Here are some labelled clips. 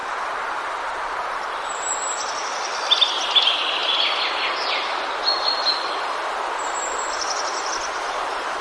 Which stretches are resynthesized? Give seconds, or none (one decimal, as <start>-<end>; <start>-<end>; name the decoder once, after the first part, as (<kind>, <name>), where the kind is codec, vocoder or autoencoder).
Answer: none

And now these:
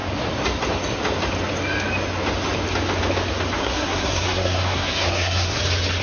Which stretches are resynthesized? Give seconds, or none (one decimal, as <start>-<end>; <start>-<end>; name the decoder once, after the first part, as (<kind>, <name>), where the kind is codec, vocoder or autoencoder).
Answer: 3.6-5.6 (codec, SNAC)

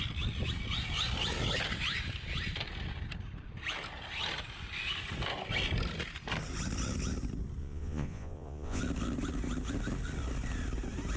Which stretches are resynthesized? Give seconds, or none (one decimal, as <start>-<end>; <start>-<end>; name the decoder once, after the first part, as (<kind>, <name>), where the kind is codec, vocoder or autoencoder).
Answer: 7.6-8.8 (vocoder, Vocos)

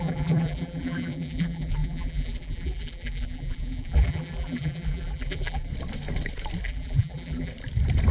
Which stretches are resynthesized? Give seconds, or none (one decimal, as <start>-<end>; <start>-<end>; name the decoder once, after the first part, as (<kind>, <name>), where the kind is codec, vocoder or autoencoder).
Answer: 0.0-5.7 (vocoder, BigVGAN v2); 6.6-7.5

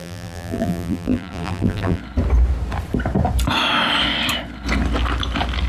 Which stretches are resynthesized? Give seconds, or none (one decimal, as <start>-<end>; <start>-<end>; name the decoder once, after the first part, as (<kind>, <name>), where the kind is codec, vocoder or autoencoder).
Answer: 0.0-2.0 (vocoder, BigVGAN v2)

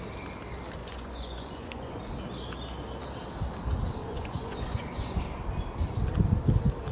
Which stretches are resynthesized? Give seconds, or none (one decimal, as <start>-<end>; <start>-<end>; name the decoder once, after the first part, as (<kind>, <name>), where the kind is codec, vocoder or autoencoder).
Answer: 0.8-2.0 (vocoder, Vocos); 4.0-5.2

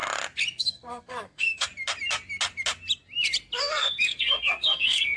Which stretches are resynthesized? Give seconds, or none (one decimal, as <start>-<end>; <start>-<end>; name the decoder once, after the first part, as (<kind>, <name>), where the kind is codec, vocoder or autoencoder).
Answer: 0.6-1.7 (codec, SNAC); 3.6-5.2